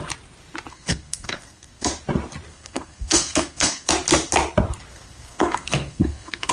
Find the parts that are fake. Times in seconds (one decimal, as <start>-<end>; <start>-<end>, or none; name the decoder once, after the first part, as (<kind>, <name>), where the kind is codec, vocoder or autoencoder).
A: 0.7-1.9 (codec, SNAC); 2.5-3.9; 4.9-6.5